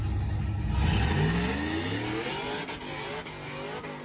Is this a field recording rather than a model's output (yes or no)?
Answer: yes